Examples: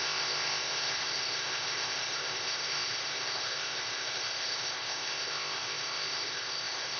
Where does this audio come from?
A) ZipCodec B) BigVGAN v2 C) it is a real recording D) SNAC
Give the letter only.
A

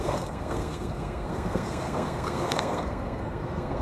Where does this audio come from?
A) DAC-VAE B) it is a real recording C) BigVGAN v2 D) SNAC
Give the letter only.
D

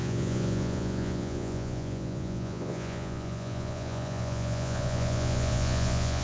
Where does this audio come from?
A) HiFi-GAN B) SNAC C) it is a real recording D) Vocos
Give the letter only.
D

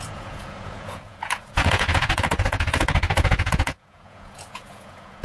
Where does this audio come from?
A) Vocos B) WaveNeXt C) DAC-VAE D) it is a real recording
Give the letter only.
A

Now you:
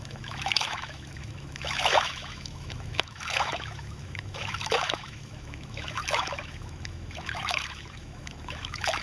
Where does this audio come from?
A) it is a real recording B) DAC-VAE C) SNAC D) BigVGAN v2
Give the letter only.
B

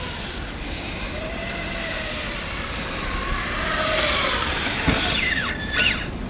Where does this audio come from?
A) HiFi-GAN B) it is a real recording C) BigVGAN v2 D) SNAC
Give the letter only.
B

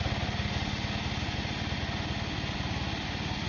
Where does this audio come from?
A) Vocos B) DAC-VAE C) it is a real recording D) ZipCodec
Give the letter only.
C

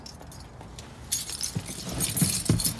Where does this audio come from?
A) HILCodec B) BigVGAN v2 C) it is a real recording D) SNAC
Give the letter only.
C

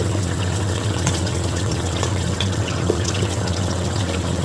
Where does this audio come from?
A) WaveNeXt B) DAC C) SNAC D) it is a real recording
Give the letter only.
A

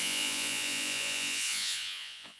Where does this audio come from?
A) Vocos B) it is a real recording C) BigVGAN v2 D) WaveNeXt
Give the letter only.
A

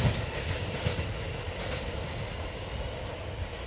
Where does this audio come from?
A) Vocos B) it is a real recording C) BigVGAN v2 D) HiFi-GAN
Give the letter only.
B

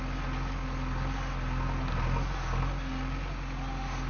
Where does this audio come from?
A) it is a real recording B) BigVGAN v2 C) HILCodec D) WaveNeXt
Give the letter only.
A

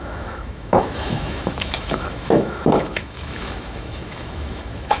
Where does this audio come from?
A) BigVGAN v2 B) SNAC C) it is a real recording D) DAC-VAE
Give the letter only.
D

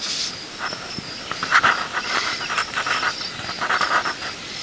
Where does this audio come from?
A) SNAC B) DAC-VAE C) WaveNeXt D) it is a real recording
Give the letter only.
D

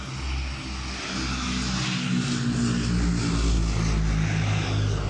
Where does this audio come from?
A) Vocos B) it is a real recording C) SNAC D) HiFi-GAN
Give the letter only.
B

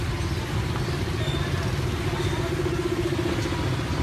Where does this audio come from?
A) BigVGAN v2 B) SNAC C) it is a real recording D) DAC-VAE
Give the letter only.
C